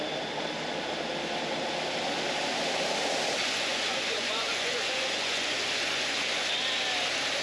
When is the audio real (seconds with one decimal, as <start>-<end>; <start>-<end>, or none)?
0.0-3.4; 6.4-7.4